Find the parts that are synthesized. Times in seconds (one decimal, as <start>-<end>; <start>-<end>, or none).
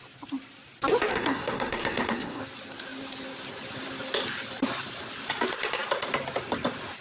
1.1-2.4